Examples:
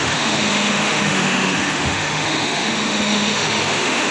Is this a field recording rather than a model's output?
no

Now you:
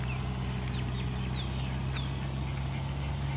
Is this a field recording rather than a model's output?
yes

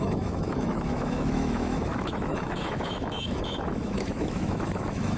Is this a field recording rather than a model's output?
no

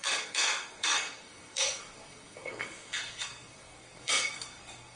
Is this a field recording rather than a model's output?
no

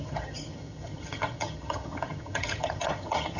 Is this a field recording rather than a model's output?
no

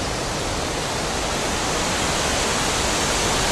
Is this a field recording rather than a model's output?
yes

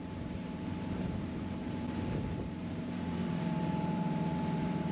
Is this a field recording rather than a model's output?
no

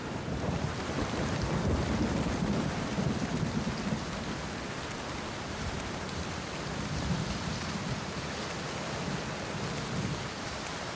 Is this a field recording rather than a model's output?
no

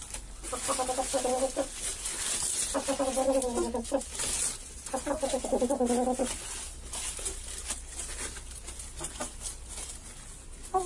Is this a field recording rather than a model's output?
yes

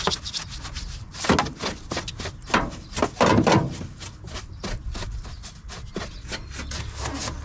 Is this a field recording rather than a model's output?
yes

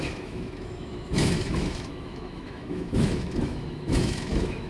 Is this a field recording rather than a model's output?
no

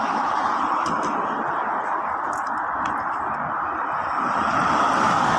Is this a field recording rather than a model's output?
yes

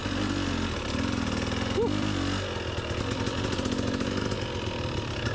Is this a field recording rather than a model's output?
yes